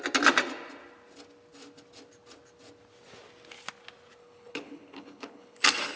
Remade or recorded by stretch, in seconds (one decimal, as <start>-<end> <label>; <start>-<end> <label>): 0.0-4.2 recorded; 4.2-5.6 remade; 5.6-6.0 recorded